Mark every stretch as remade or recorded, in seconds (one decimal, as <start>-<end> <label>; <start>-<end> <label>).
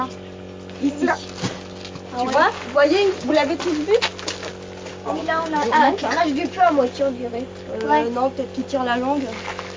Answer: 0.0-4.9 recorded; 4.9-5.9 remade; 5.9-9.8 recorded